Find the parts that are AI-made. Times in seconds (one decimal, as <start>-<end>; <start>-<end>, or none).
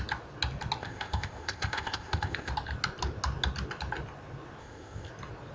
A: 0.8-2.5; 4.6-5.1